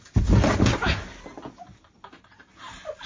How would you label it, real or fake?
real